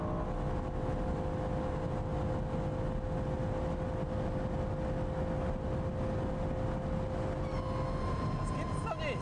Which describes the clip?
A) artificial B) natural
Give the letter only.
B